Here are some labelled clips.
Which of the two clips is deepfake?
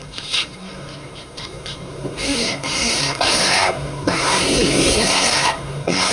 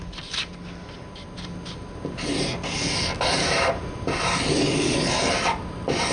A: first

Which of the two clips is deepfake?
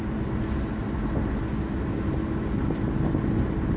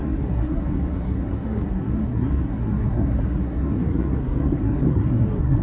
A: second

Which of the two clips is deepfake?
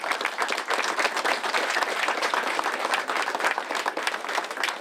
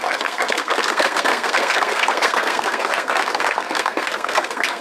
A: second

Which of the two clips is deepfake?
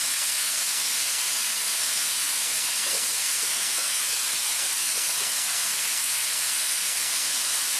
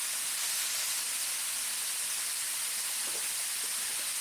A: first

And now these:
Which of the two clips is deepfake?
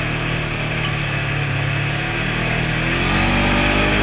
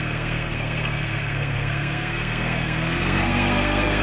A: second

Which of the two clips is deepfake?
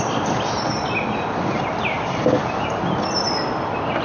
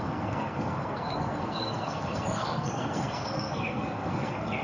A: second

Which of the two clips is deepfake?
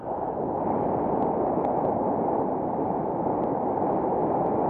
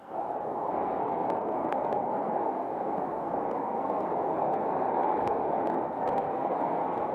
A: second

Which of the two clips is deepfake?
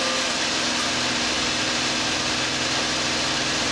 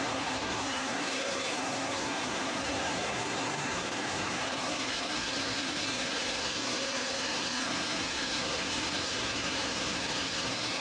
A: second